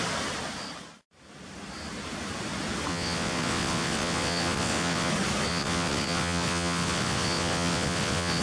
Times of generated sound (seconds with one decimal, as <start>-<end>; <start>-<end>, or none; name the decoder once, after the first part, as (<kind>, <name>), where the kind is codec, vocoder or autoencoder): 2.9-5.1 (vocoder, WaveNeXt); 5.5-8.4

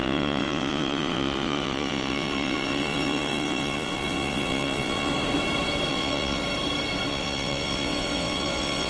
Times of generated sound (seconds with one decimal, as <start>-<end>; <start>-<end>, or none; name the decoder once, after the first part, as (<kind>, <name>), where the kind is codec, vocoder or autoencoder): 0.0-5.1 (vocoder, WaveNeXt); 5.9-6.4; 7.1-8.9

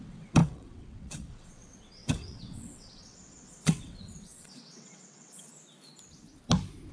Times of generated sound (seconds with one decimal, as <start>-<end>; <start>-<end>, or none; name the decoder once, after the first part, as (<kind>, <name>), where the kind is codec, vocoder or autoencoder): 0.0-5.5 (vocoder, WaveNeXt)

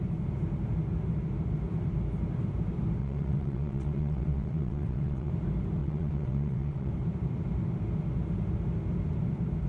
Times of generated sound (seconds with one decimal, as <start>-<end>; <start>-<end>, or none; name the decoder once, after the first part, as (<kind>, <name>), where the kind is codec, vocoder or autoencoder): 3.0-5.3 (vocoder, WaveNeXt); 5.8-6.9

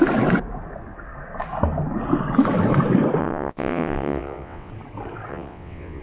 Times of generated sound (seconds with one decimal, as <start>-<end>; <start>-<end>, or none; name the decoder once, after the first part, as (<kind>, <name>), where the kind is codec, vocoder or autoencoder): 3.2-4.7 (vocoder, WaveNeXt); 5.3-6.0

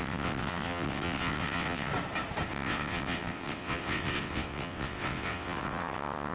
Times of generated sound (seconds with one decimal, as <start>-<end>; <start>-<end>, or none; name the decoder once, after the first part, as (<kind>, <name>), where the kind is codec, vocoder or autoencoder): 0.0-1.9 (vocoder, WaveNeXt); 2.5-6.3

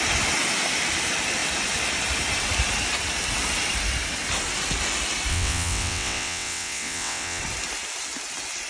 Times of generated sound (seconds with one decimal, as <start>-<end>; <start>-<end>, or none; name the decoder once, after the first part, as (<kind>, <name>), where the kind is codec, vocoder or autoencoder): 5.3-7.4 (vocoder, WaveNeXt)

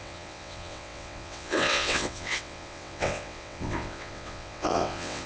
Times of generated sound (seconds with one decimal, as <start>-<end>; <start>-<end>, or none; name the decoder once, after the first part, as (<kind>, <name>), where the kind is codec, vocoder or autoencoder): 0.0-5.3 (vocoder, WaveNeXt)